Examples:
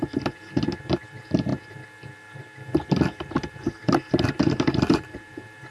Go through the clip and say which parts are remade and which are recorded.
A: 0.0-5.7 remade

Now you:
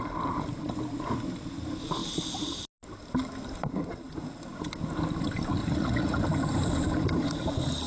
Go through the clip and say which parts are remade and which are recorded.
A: 0.0-5.6 recorded; 5.6-6.2 remade; 6.2-7.9 recorded